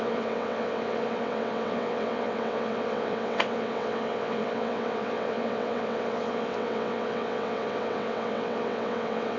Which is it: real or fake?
fake